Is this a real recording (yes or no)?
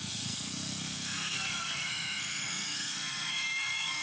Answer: no